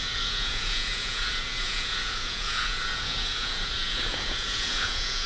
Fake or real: fake